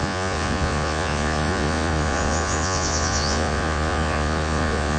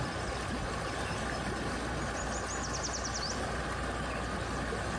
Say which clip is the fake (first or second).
first